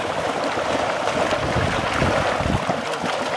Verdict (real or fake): real